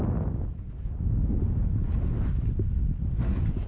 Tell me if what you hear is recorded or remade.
recorded